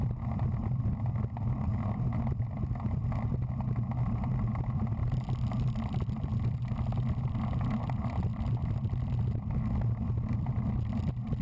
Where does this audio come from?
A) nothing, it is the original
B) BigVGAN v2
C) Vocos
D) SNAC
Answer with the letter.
A